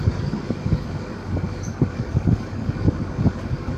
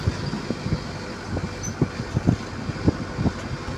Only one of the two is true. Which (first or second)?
second